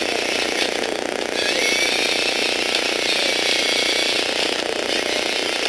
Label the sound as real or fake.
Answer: real